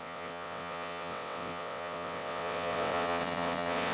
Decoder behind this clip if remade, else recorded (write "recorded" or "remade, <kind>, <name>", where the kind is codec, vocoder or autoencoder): remade, vocoder, WaveNeXt